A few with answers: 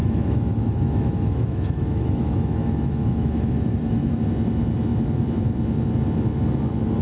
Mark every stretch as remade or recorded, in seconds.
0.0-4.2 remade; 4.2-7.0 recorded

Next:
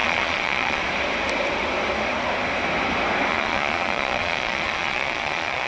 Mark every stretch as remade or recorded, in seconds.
0.0-0.8 remade; 0.8-3.3 recorded; 3.3-5.7 remade

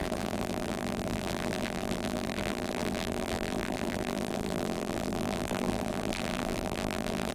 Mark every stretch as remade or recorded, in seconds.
0.0-7.3 remade

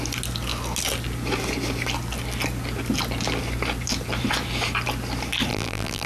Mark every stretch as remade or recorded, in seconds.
0.0-5.5 recorded; 5.5-6.1 remade

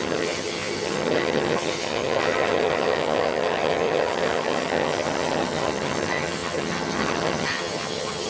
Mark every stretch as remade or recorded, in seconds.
0.0-8.3 remade

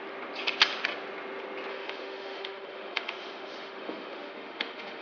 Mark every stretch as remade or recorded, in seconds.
0.0-1.7 recorded; 1.7-5.0 remade